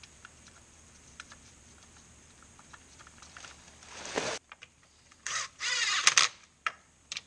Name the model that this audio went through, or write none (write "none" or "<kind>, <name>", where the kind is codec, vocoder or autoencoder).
vocoder, BigVGAN v2